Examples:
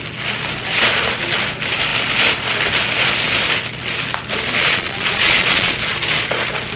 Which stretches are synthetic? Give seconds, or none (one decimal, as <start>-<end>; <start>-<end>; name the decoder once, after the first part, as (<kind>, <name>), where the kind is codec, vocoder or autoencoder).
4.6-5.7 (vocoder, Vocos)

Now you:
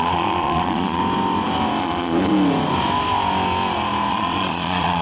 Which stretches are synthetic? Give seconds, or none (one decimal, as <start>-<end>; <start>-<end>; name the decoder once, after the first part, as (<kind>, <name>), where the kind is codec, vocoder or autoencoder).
0.0-1.0 (vocoder, Vocos); 1.8-2.3; 4.1-5.0

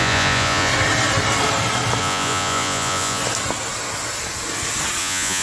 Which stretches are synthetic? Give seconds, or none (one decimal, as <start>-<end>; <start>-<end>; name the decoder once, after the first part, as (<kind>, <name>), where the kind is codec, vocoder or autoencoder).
0.0-0.7 (vocoder, Vocos); 2.0-3.2; 5.0-5.4